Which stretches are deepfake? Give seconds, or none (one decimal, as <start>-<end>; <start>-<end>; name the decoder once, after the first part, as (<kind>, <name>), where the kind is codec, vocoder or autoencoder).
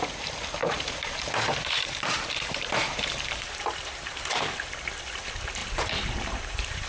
0.6-4.7 (vocoder, BigVGAN v2); 5.6-6.9